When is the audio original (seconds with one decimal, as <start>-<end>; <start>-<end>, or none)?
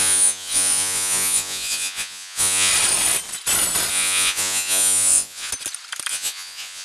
2.7-3.9; 5.5-6.1